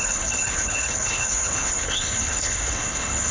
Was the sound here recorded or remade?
remade